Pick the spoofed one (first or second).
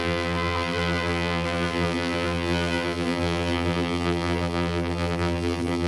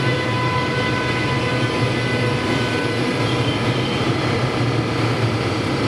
first